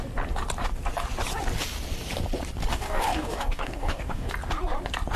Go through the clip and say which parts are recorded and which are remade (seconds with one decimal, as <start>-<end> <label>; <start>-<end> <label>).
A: 0.0-2.7 recorded; 2.7-4.3 remade; 4.3-5.2 recorded

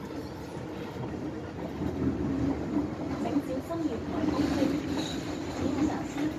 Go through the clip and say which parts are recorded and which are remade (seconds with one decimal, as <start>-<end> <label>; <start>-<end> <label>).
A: 0.0-6.4 recorded

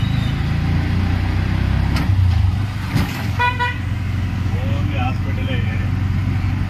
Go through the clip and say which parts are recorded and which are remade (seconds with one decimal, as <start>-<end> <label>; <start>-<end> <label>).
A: 0.0-2.9 recorded; 2.9-5.5 remade; 5.5-6.7 recorded

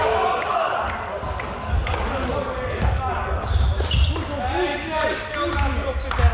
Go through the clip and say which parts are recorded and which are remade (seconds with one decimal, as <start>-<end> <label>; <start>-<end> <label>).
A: 0.0-0.5 recorded; 0.5-3.5 remade; 3.5-4.7 recorded; 4.7-5.3 remade; 5.3-6.3 recorded

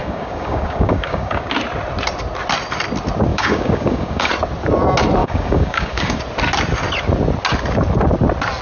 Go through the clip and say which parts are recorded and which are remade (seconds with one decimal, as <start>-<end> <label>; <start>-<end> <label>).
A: 0.0-1.5 remade; 1.5-3.3 recorded; 3.3-4.3 remade; 4.3-5.2 recorded; 5.2-6.2 remade; 6.2-8.6 recorded

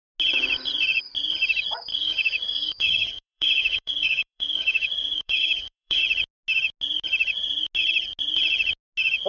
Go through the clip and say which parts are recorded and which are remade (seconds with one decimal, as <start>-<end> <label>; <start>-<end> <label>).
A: 0.0-1.9 recorded; 1.9-6.0 remade; 6.0-9.3 recorded

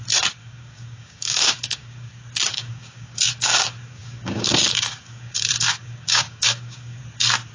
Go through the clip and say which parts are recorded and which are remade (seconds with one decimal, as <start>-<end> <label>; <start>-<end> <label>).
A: 0.0-0.4 recorded; 0.4-2.1 remade; 2.1-2.5 recorded; 2.5-7.0 remade; 7.0-7.5 recorded